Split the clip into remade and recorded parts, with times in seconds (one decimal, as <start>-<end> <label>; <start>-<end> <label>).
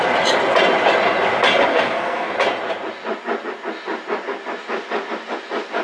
0.0-1.7 recorded; 1.7-2.3 remade; 2.3-5.8 recorded